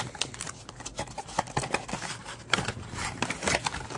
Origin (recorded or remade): recorded